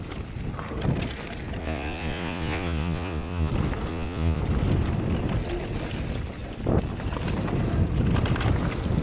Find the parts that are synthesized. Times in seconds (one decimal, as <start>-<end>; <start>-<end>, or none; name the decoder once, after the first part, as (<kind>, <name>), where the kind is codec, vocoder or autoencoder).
1.6-3.5 (vocoder, Vocos); 3.9-4.4